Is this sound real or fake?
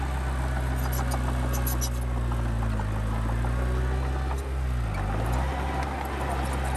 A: real